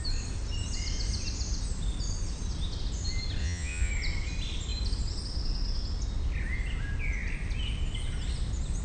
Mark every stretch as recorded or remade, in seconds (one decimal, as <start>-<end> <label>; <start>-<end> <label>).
0.0-3.4 recorded; 3.4-3.9 remade; 3.9-8.8 recorded